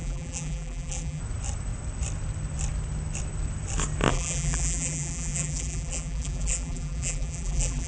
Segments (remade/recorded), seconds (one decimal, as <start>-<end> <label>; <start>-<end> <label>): 0.0-1.2 remade; 1.2-4.1 recorded; 4.1-7.9 remade